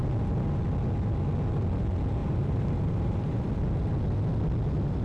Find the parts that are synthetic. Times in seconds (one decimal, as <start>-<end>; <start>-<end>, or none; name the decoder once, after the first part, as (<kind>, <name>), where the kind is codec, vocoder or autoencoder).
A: 2.2-3.5 (vocoder, BigVGAN v2)